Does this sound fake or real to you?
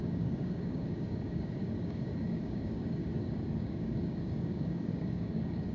fake